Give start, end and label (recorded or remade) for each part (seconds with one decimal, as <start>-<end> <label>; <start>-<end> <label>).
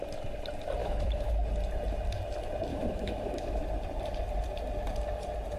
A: 0.0-0.8 recorded; 0.8-1.4 remade; 1.4-2.7 recorded; 2.7-3.6 remade; 3.6-5.6 recorded